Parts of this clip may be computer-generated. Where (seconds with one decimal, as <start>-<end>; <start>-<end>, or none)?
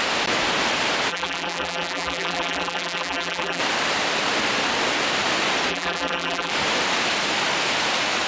1.1-3.6; 5.7-6.5